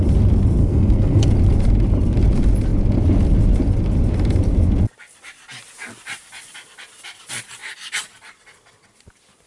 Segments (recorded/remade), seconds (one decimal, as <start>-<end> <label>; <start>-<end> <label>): 0.0-0.6 recorded; 0.6-1.3 remade; 1.3-9.5 recorded